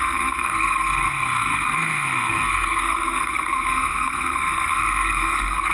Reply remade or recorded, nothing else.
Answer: remade